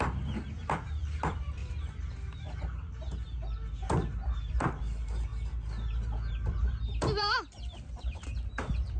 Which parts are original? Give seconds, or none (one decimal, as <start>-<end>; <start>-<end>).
1.6-4.5; 5.3-6.3